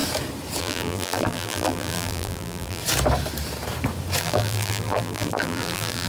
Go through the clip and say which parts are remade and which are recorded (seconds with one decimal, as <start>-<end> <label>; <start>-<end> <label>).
0.0-0.6 recorded; 0.6-2.8 remade; 2.8-4.2 recorded; 4.2-6.1 remade

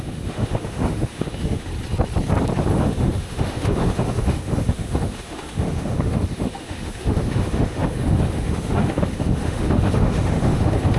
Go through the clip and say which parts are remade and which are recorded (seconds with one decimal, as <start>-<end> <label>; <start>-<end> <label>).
0.0-1.7 remade; 1.7-2.8 recorded; 2.8-11.0 remade

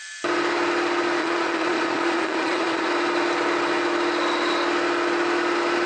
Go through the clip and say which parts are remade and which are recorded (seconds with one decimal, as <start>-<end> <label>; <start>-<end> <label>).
0.0-1.2 recorded; 1.2-2.9 remade; 2.9-5.9 recorded